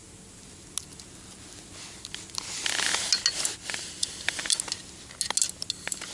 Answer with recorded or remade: recorded